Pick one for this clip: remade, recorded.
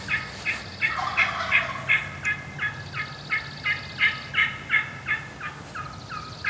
recorded